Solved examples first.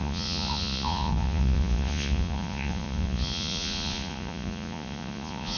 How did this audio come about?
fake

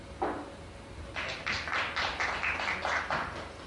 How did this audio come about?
real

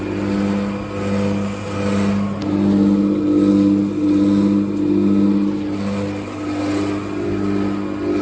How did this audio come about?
real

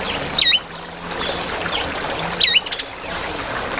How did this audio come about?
real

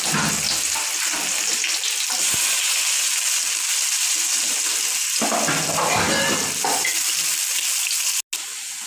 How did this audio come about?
real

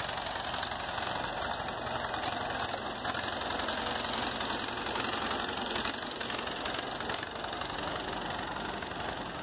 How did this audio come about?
real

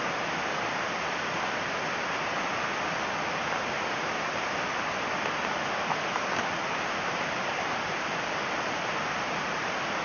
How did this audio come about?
real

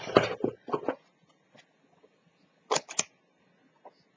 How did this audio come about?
real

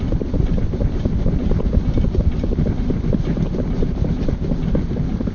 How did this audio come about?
real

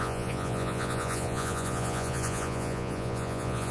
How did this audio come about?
fake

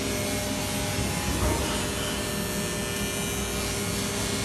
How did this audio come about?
real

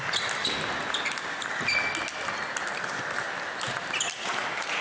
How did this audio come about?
real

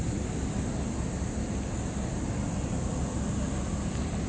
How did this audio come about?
real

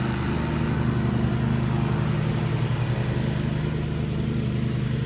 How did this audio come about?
real